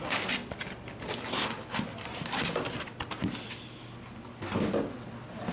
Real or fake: real